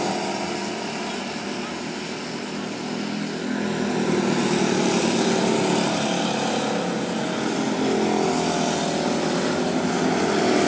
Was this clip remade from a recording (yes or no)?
no